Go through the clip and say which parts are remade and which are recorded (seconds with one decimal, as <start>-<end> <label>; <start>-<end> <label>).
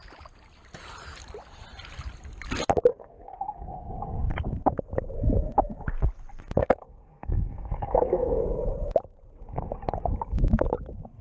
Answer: 0.0-2.9 recorded; 2.9-3.9 remade; 3.9-6.6 recorded; 6.6-8.4 remade; 8.4-11.2 recorded